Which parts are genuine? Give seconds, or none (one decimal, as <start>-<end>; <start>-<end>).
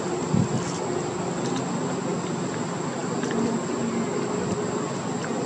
0.0-5.5